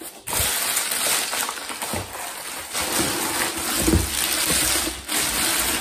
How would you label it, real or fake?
real